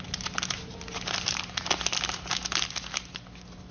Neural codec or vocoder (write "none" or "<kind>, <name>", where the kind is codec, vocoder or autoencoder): none